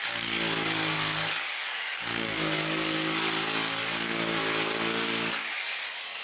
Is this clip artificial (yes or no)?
yes